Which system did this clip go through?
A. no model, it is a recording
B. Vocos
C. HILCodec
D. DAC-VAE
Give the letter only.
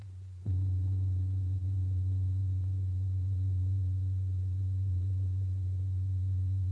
B